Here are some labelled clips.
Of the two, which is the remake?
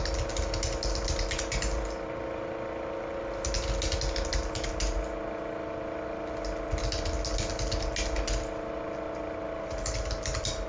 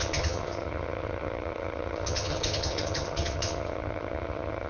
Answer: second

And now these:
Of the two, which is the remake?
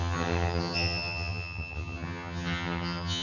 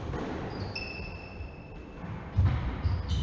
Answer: first